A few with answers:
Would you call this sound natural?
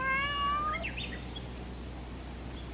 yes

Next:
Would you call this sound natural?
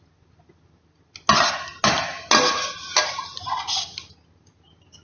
yes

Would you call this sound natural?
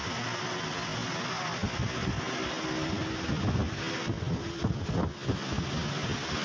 yes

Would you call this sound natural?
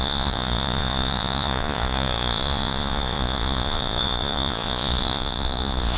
no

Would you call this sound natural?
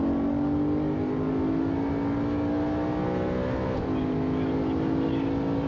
yes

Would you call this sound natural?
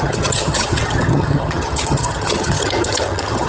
no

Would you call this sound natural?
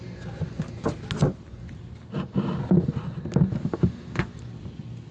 yes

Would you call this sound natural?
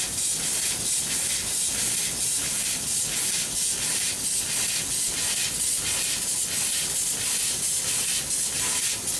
yes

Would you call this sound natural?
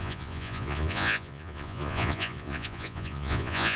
no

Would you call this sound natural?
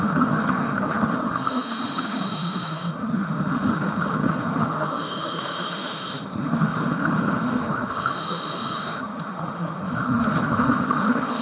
no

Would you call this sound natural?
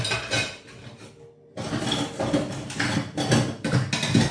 yes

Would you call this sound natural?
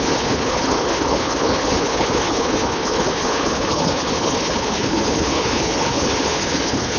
no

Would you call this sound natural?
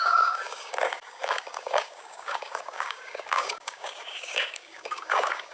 no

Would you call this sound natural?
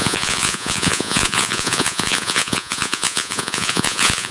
no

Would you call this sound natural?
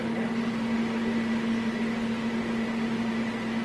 yes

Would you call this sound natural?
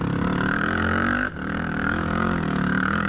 no